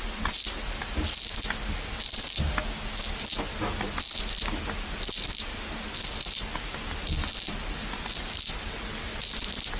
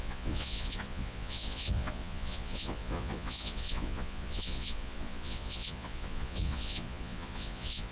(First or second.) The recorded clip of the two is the first